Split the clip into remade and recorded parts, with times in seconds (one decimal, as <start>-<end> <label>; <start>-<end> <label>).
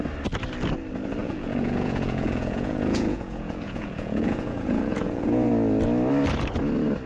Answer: 0.0-1.2 recorded; 1.2-5.5 remade; 5.5-7.1 recorded